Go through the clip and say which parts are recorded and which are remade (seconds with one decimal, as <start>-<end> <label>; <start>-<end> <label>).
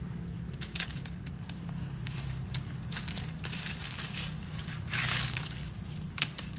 0.0-5.6 remade; 5.6-6.1 recorded; 6.1-6.6 remade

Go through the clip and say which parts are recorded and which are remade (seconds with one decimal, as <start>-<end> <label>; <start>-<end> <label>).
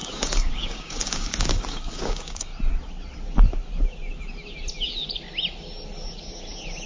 0.0-2.5 remade; 2.5-6.9 recorded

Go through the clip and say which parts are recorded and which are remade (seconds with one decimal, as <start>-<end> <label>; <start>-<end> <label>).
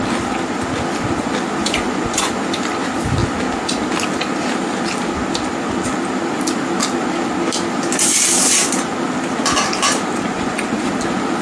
0.0-1.6 recorded; 1.6-2.3 remade; 2.3-10.3 recorded; 10.3-10.9 remade; 10.9-11.4 recorded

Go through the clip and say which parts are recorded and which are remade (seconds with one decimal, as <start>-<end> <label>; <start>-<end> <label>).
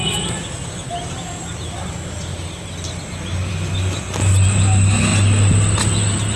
0.0-6.4 recorded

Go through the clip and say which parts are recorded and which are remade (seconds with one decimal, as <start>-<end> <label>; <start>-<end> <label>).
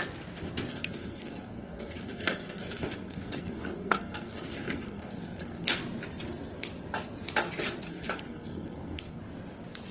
0.0-0.7 recorded; 0.7-5.8 remade; 5.8-7.9 recorded; 7.9-9.2 remade; 9.2-9.9 recorded